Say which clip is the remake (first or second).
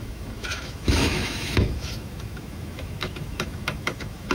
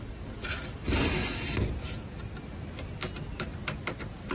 first